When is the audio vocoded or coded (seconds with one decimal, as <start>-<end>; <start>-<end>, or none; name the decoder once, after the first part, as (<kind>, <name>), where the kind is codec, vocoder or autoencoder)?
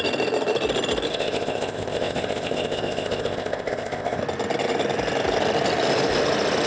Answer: 1.1-4.2 (codec, ZipCodec)